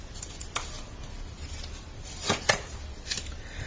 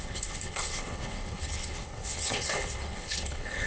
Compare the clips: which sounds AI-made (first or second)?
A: second